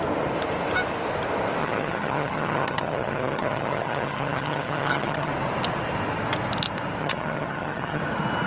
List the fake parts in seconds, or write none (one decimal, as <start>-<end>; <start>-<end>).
1.6-5.3; 7.0-8.0